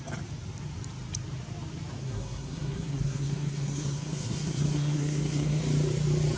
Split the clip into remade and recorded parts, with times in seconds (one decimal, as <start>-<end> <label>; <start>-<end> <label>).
0.0-2.0 recorded; 2.0-5.6 remade; 5.6-6.4 recorded